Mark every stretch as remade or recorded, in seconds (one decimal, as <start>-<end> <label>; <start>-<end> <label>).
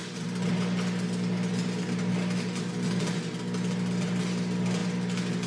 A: 0.0-5.5 recorded